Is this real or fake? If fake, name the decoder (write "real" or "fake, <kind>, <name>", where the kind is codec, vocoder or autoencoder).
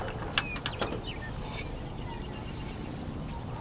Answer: real